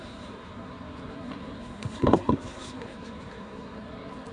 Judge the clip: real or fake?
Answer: fake